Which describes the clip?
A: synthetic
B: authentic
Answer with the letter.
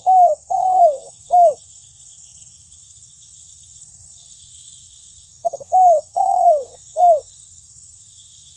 A